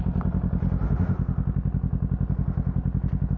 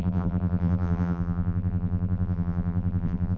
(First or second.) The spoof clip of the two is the second